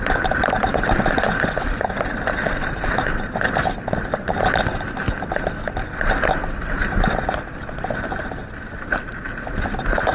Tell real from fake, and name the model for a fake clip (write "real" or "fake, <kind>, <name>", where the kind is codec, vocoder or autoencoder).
real